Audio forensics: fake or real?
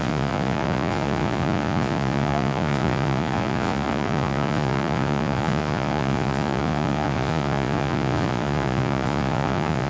fake